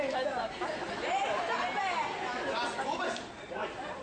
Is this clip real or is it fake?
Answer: fake